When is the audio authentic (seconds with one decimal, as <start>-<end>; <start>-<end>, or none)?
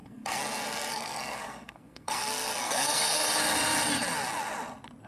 3.1-5.1